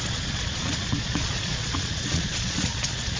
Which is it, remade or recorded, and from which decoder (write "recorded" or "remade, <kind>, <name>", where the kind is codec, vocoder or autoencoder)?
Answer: remade, vocoder, Vocos